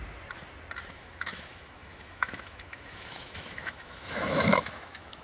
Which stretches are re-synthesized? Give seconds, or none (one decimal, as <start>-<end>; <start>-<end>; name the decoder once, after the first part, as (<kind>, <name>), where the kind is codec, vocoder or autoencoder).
0.9-5.2 (autoencoder, DAC-VAE)